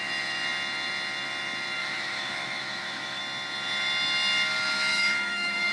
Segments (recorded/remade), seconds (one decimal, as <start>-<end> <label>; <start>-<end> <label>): 0.0-1.8 recorded; 1.8-3.2 remade; 3.2-4.9 recorded; 4.9-5.7 remade